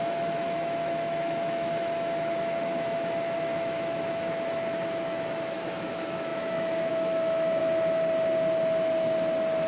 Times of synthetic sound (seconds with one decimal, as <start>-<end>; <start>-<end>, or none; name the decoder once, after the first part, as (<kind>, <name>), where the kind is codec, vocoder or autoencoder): 0.0-7.6 (autoencoder, DAC-VAE)

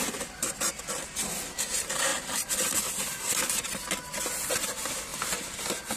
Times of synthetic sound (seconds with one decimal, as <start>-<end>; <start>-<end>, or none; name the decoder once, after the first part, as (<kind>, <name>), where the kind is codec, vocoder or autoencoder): none

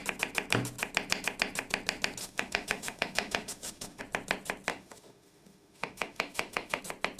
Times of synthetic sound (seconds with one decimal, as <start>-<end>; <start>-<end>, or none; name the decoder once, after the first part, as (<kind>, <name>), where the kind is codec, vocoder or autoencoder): 2.2-4.0 (autoencoder, DAC-VAE); 4.7-6.8

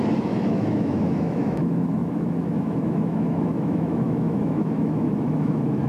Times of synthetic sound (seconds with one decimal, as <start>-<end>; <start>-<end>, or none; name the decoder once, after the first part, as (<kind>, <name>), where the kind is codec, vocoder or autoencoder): 0.0-5.9 (autoencoder, DAC-VAE)

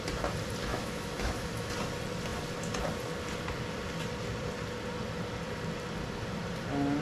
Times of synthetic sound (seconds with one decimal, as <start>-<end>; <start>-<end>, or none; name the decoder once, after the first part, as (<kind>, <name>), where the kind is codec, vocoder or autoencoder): 0.7-1.7 (autoencoder, DAC-VAE)

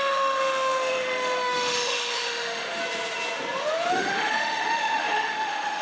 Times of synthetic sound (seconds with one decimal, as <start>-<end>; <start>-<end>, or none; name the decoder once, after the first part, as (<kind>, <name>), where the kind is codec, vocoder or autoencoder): 0.0-2.8 (autoencoder, DAC-VAE); 3.9-5.8

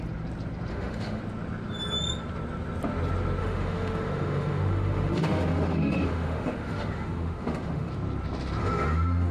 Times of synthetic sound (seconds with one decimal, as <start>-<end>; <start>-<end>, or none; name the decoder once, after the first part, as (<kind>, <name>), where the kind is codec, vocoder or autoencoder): 0.7-1.2 (autoencoder, DAC-VAE); 3.4-7.9; 8.6-9.3